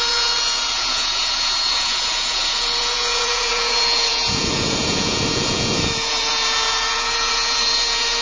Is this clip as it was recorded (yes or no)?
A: no